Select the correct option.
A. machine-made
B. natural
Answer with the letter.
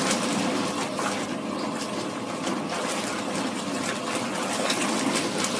A